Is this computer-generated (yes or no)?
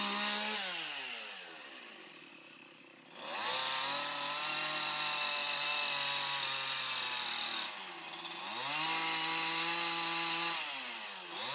no